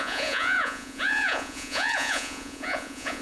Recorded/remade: remade